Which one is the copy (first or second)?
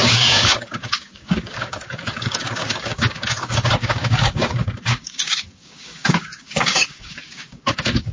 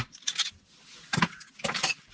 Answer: first